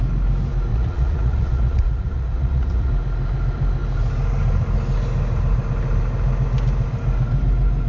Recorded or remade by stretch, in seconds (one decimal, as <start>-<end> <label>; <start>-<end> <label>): 0.0-0.7 recorded; 0.7-2.9 remade; 2.9-7.9 recorded